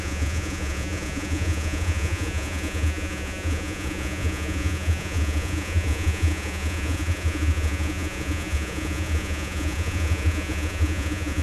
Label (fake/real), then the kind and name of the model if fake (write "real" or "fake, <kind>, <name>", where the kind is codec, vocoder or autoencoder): fake, vocoder, Vocos